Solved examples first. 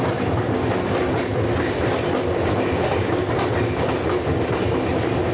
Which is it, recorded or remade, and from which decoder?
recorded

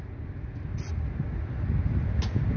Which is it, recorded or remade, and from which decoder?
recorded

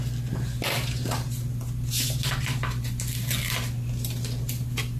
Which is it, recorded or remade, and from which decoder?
recorded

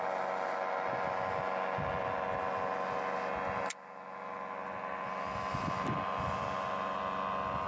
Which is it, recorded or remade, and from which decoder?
recorded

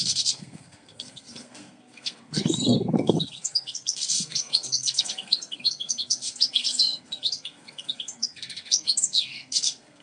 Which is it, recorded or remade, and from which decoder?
remade, codec, SNAC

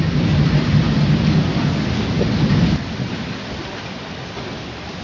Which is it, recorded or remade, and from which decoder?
recorded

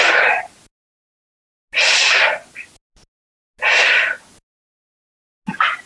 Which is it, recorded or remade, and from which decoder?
recorded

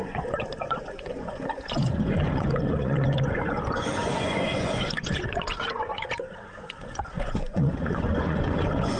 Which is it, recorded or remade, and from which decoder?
remade, vocoder, Vocos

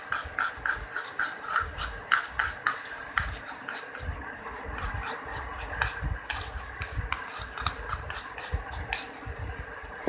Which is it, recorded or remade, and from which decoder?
recorded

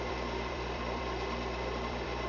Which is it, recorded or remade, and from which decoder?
remade, vocoder, BigVGAN v2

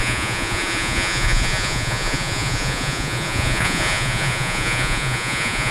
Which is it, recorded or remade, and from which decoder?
remade, vocoder, Vocos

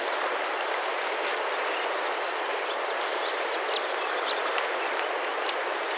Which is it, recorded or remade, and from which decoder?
recorded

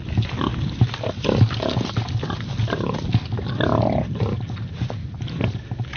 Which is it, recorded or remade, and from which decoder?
recorded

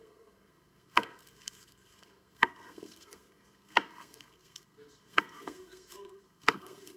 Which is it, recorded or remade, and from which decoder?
remade, codec, SNAC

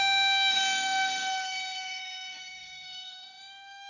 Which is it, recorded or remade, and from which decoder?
remade, autoencoder, DAC-VAE